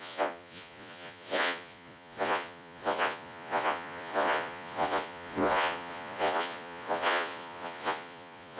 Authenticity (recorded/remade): remade